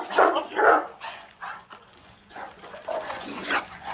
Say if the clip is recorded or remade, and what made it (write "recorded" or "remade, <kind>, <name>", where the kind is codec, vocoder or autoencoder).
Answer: remade, vocoder, Vocos